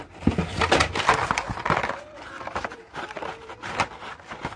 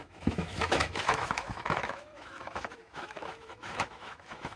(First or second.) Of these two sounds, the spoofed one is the second